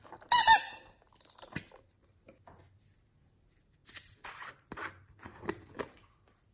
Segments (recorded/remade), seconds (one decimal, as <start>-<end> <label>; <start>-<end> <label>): 0.0-3.8 recorded; 3.8-4.5 remade; 4.5-5.3 recorded; 5.3-5.8 remade; 5.8-6.5 recorded